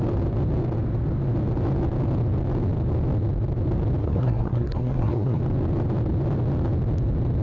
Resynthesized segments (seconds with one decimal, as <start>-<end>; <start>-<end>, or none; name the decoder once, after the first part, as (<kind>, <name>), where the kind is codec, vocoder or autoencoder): 4.0-5.4 (codec, SNAC)